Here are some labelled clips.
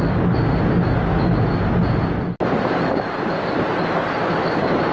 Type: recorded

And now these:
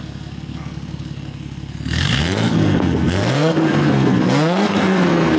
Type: remade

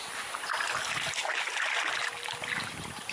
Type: recorded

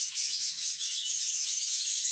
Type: remade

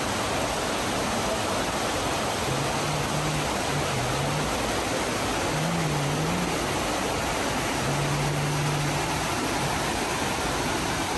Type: recorded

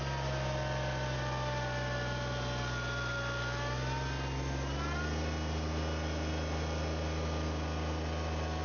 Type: recorded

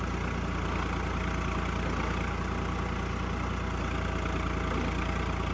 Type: recorded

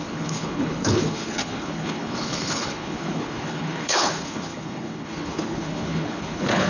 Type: remade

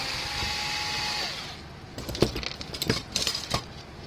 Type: recorded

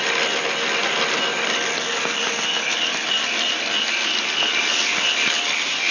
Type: recorded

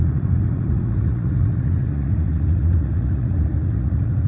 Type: remade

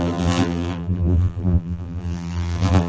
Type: remade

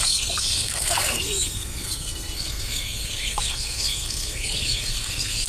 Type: remade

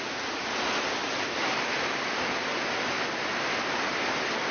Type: recorded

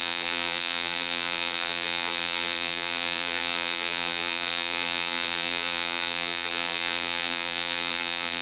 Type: remade